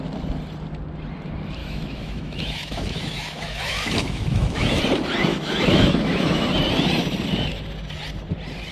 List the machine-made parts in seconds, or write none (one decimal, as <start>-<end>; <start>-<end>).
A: 1.6-4.8; 5.3-6.5